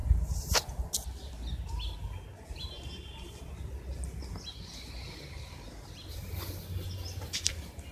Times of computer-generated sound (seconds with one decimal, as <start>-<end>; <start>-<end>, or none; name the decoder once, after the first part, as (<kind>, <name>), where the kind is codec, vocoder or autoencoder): 0.0-0.9 (vocoder, BigVGAN v2); 2.3-3.4